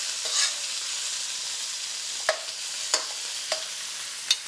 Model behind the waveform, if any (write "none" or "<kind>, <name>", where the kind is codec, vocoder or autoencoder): none